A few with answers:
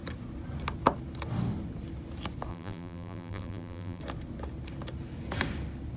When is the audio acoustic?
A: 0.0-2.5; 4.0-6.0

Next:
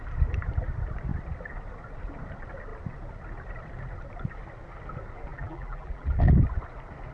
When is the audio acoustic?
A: 0.0-5.3; 6.2-7.1

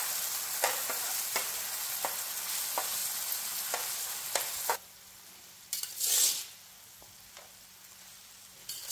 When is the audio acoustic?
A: 0.0-8.9

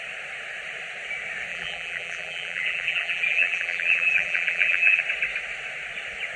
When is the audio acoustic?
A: 0.0-1.5; 5.0-6.4

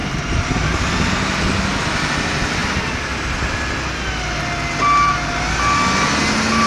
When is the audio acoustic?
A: 1.1-6.7

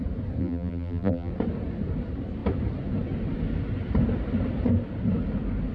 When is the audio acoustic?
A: 0.0-0.4; 1.3-5.7

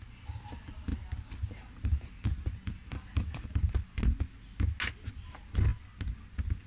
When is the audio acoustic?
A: 0.0-6.7